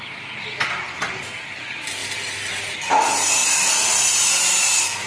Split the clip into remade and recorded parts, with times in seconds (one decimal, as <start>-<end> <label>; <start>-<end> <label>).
0.0-5.1 recorded